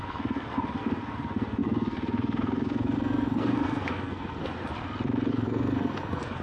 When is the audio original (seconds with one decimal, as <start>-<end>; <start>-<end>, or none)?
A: 4.7-5.3